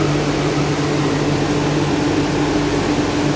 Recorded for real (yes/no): yes